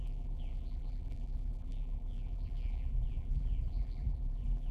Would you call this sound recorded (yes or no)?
no